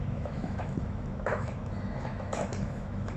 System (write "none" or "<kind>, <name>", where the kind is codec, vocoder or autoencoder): autoencoder, DAC-VAE